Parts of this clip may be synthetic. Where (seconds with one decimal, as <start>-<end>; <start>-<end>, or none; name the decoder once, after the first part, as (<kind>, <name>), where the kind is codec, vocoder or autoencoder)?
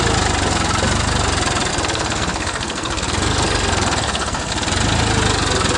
1.7-4.5 (codec, SNAC)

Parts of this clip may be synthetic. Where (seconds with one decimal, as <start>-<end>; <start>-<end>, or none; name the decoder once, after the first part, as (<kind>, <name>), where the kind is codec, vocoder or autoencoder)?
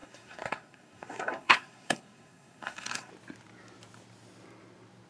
0.0-3.1 (codec, SNAC)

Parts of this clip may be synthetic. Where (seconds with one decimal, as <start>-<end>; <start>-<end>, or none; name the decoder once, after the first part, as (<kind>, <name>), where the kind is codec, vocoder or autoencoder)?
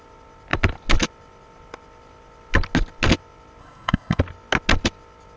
3.6-4.2 (codec, SNAC)